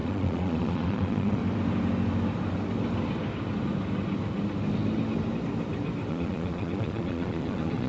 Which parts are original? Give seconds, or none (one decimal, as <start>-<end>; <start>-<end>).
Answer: 1.4-6.1